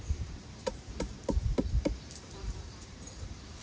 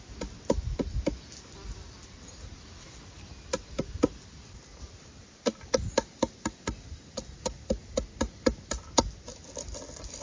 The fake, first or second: first